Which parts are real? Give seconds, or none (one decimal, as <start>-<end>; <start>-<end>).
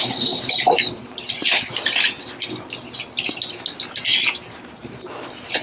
1.4-4.8